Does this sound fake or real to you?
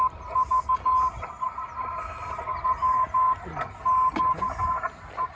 real